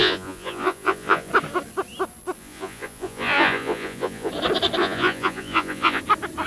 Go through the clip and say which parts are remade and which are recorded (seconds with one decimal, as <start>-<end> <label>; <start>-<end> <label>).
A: 0.0-1.3 remade; 1.3-2.4 recorded; 2.4-4.3 remade; 4.3-4.8 recorded; 4.8-6.0 remade; 6.0-6.5 recorded